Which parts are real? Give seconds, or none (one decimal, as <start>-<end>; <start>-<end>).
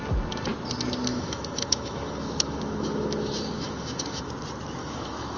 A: 0.0-1.1; 4.3-4.8